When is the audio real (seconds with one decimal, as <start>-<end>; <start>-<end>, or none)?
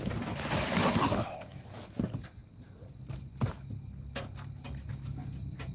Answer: 0.0-5.7